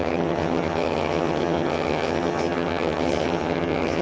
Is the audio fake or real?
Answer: fake